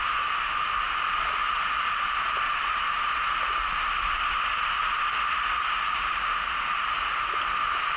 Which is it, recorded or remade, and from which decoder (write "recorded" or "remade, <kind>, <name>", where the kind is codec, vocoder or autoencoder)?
recorded